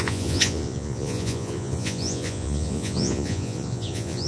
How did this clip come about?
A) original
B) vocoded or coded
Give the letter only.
B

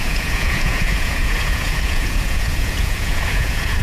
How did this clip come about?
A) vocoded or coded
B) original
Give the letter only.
A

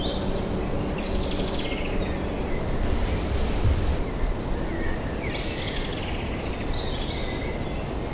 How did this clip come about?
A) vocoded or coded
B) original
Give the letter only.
B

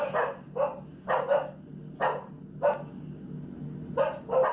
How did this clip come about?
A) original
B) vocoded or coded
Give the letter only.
A